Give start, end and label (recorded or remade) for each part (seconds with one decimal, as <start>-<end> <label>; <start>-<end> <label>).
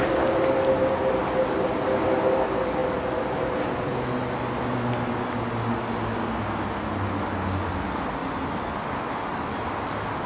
0.0-10.3 recorded